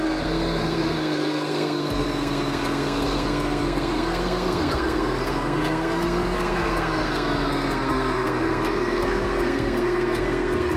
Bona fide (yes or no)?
no